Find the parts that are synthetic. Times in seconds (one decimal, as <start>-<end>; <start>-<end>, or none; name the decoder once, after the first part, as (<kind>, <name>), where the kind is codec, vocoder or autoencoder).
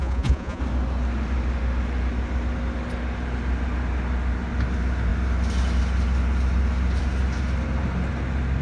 0.0-0.6 (vocoder, Vocos)